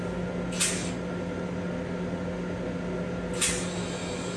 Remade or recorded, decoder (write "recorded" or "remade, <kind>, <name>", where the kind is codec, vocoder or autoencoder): recorded